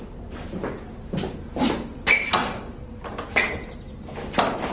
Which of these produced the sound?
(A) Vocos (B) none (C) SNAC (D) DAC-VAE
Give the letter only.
B